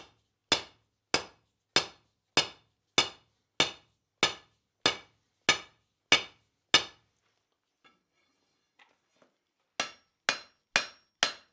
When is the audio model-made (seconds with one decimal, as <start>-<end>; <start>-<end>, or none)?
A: none

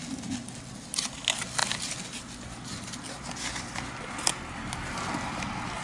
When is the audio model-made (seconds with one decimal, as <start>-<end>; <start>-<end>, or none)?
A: none

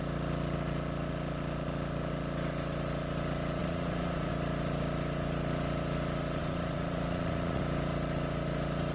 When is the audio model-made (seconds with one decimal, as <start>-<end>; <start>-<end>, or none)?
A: 3.6-4.3; 6.4-7.6

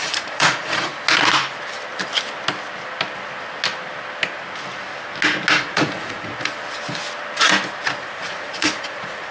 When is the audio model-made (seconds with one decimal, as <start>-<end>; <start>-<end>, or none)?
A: 0.0-0.9; 5.6-6.3; 8.0-9.3

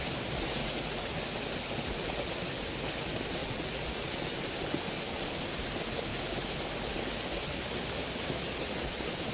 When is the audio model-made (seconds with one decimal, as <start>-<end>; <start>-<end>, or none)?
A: 0.6-1.2; 3.4-4.1

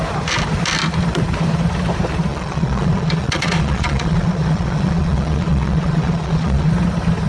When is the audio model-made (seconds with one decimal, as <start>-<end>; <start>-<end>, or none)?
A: 2.3-6.7

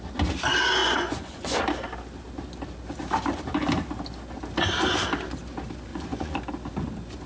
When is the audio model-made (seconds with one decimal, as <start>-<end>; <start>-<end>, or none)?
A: 0.8-1.6; 5.9-6.4